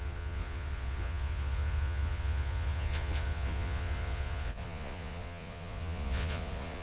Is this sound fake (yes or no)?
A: yes